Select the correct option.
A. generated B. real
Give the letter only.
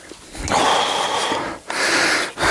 B